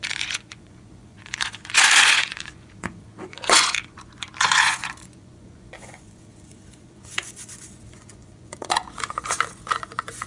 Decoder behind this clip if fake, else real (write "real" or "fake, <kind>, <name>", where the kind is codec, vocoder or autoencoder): fake, vocoder, Vocos